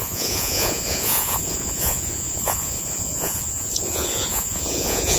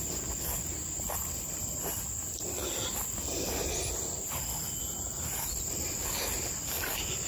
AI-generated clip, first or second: first